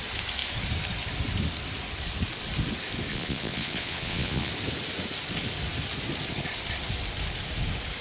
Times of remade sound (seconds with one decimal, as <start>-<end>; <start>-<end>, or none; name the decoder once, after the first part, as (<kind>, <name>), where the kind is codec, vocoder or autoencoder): 3.1-4.5 (vocoder, Vocos)